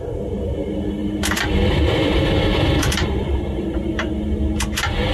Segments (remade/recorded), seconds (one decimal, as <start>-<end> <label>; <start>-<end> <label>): 0.0-1.0 recorded; 1.0-4.1 remade; 4.1-5.1 recorded